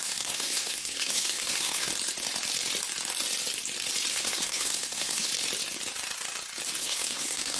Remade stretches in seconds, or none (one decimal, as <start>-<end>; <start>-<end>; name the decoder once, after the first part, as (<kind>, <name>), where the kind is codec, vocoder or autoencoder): 0.0-1.9 (codec, SNAC); 4.1-5.3; 6.8-7.6